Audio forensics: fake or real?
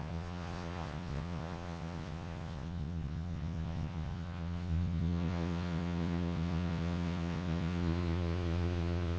fake